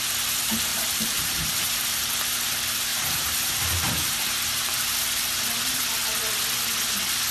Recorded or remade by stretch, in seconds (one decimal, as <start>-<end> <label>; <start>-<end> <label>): 0.0-0.7 recorded; 0.7-2.1 remade; 2.1-2.9 recorded; 2.9-5.4 remade; 5.4-7.3 recorded